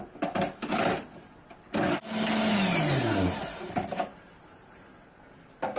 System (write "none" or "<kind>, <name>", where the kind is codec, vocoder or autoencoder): none